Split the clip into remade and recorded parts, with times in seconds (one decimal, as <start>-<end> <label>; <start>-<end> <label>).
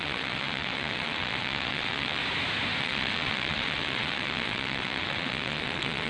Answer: 0.0-2.2 remade; 2.2-2.8 recorded; 2.8-6.1 remade